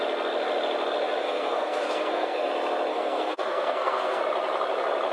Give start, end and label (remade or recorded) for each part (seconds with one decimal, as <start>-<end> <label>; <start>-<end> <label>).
0.0-1.2 recorded; 1.2-2.5 remade; 2.5-2.9 recorded; 2.9-4.2 remade; 4.2-5.1 recorded